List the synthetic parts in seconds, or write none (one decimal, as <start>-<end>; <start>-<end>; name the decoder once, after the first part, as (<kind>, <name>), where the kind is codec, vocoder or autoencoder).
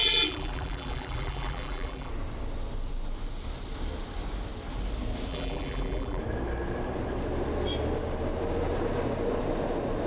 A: 0.0-2.1 (vocoder, BigVGAN v2); 5.3-6.2